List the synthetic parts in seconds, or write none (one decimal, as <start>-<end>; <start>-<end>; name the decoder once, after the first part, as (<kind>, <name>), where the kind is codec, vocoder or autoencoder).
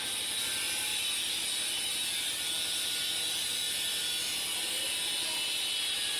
none